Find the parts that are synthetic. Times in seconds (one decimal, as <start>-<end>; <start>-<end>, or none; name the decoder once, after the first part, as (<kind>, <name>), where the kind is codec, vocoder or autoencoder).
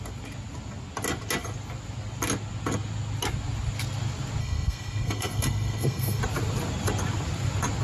4.4-6.2 (codec, SNAC)